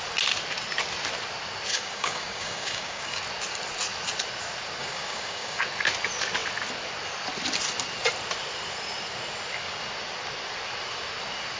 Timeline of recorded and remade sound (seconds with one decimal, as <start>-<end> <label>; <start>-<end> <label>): 0.0-1.7 recorded; 1.7-3.2 remade; 3.2-4.8 recorded; 4.8-5.6 remade; 5.6-11.6 recorded